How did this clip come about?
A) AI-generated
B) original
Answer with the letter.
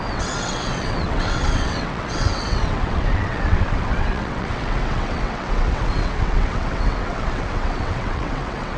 A